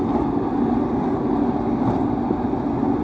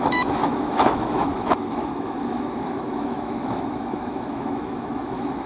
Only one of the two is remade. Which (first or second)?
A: second